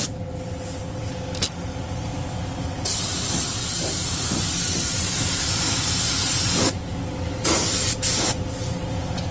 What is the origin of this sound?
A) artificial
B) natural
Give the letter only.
B